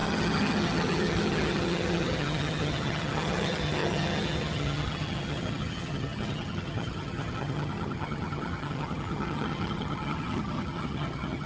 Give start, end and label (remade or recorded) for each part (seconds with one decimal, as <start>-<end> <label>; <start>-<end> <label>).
0.0-11.5 remade